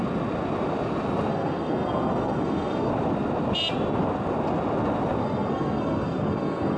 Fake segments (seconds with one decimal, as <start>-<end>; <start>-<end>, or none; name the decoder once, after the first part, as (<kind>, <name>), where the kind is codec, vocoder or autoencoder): 1.3-2.9 (codec, SNAC); 5.2-6.8